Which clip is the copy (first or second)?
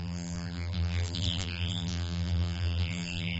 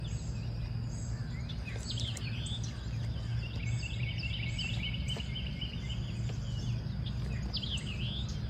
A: first